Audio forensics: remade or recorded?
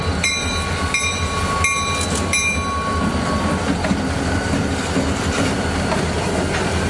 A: recorded